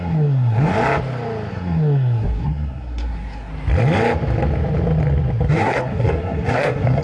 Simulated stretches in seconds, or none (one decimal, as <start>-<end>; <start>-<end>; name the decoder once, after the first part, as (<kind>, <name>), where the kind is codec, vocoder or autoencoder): 0.0-0.7 (codec, SNAC); 1.5-3.5; 5.5-7.0